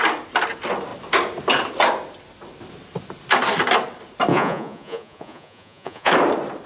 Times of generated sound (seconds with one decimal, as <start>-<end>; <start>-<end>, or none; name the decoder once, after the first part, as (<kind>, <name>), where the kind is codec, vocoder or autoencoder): 4.3-6.1 (vocoder, Vocos)